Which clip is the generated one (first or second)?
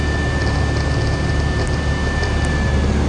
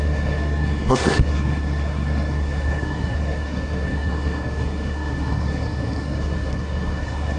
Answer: second